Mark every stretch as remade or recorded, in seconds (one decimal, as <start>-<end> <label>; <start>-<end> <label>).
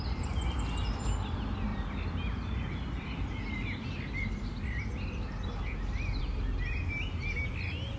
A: 0.0-8.0 recorded